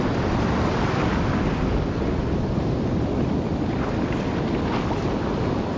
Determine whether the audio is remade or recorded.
recorded